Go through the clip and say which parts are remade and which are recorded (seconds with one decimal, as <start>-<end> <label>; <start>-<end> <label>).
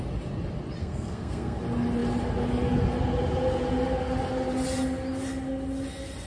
0.0-0.8 recorded; 0.8-1.6 remade; 1.6-6.3 recorded